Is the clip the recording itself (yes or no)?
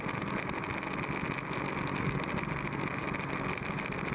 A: yes